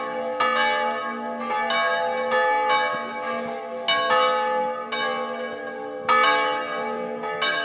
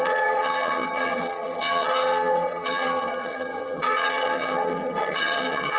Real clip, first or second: first